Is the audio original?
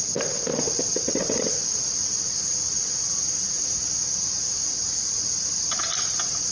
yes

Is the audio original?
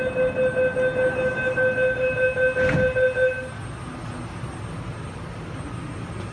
yes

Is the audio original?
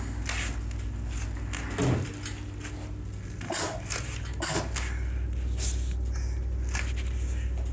yes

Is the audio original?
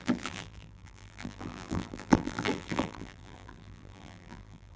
no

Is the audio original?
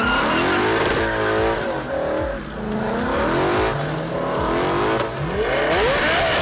yes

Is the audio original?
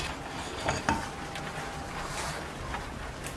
yes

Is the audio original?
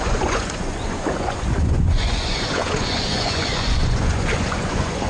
no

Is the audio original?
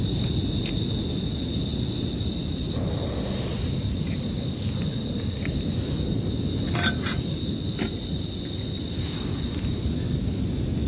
yes